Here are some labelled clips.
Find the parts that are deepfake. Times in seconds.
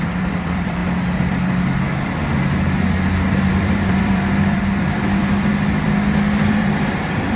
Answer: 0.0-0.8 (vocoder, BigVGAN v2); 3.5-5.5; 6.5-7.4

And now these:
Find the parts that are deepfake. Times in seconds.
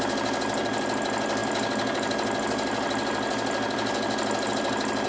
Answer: none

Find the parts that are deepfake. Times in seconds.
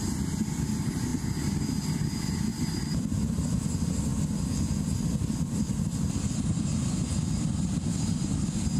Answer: 1.1-1.6 (vocoder, BigVGAN v2); 2.5-3.0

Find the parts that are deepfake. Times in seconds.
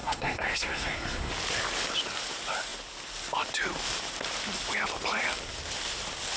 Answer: 0.0-1.3 (codec, SNAC)